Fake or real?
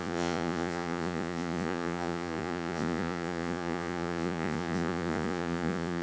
fake